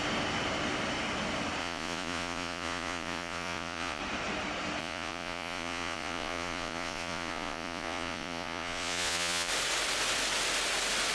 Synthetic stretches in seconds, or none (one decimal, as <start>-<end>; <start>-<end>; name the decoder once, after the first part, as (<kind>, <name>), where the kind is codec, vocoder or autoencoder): 1.6-4.0 (vocoder, Vocos); 4.8-9.5